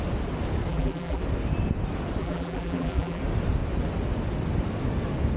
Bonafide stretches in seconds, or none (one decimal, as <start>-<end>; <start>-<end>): 0.0-0.7; 1.2-2.2; 3.2-5.4